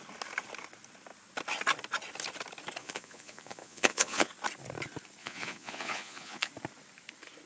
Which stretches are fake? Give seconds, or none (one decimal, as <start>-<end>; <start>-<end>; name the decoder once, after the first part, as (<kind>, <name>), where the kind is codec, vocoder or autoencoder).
2.8-4.3 (vocoder, Vocos); 5.2-6.5